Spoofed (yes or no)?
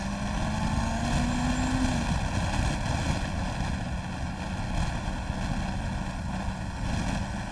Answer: no